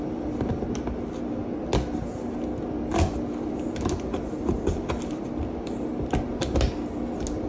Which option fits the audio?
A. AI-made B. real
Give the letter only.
B